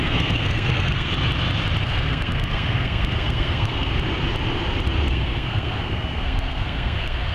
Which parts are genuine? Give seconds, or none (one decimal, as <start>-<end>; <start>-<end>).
1.1-1.8; 3.9-5.1